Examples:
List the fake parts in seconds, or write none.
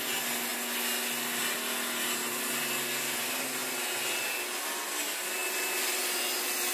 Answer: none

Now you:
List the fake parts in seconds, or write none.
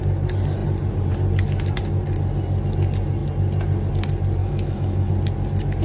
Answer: 4.4-5.1 (autoencoder, DAC-VAE)